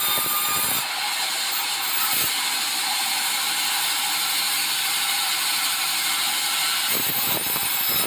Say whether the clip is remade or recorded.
recorded